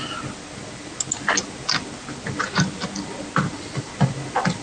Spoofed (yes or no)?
no